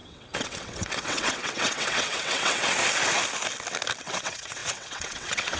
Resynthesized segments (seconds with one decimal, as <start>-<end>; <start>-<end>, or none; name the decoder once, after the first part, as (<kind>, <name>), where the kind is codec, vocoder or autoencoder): 0.0-2.8 (vocoder, WaveNeXt); 4.0-5.6